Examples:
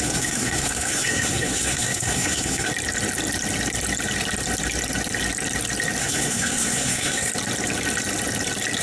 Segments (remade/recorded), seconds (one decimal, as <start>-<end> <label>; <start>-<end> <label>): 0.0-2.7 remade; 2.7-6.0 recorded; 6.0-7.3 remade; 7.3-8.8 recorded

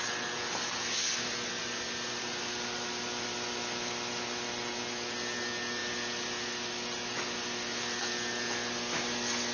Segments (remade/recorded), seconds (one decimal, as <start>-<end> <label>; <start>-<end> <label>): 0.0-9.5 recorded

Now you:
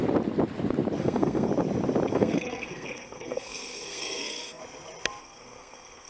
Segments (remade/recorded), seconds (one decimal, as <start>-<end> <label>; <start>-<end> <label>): 0.0-1.0 recorded; 1.0-1.5 remade; 1.5-2.1 recorded; 2.1-4.6 remade; 4.6-5.2 recorded; 5.2-6.1 remade

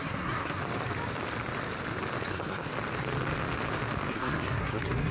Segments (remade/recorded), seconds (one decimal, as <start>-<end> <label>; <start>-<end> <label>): 0.0-0.6 remade; 0.6-2.3 recorded; 2.3-2.7 remade; 2.7-4.1 recorded; 4.1-5.1 remade

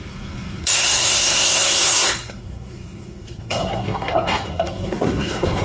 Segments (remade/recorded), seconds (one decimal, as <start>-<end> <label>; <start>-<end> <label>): 0.0-5.6 remade

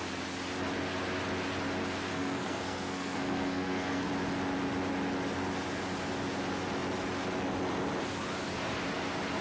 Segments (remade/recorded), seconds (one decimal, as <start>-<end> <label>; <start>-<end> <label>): 0.0-2.1 recorded; 2.1-4.1 remade; 4.1-9.4 recorded